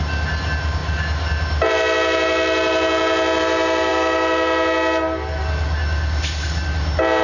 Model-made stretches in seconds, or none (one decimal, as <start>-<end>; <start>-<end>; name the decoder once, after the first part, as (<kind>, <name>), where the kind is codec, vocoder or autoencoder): none